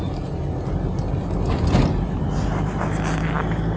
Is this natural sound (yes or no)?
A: yes